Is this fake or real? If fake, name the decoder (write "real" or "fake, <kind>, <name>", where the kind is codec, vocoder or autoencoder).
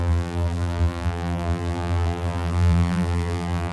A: fake, vocoder, BigVGAN v2